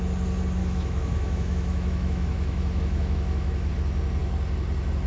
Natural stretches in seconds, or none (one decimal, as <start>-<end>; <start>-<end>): 0.0-0.6; 3.7-5.1